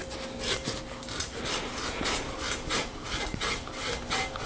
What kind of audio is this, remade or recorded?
recorded